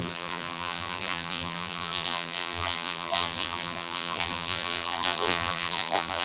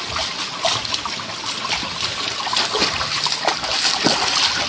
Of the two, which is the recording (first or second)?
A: second